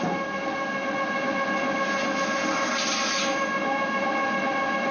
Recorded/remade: recorded